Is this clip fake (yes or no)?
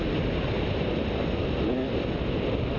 no